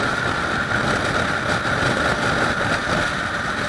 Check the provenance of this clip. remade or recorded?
recorded